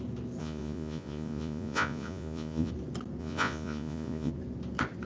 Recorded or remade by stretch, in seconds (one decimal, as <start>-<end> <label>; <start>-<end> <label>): 0.0-0.4 recorded; 0.4-2.7 remade; 2.7-3.2 recorded; 3.2-4.3 remade; 4.3-5.0 recorded